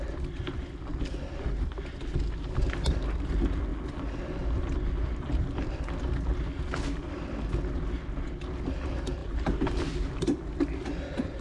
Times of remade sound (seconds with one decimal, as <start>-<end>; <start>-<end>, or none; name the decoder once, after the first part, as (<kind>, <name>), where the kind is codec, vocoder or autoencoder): none